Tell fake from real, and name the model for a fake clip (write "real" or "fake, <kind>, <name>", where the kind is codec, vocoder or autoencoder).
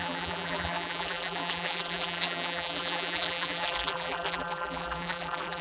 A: fake, vocoder, BigVGAN v2